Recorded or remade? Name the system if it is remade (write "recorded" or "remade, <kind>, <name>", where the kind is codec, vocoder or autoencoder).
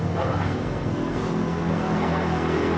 remade, codec, SNAC